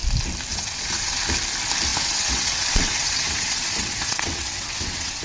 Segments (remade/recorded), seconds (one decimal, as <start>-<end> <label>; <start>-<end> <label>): 0.0-0.5 recorded; 0.5-1.2 remade; 1.2-1.9 recorded; 1.9-5.2 remade